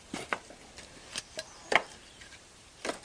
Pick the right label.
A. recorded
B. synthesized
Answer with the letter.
B